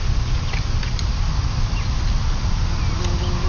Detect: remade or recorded recorded